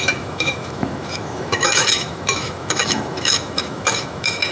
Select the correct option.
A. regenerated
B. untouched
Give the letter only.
A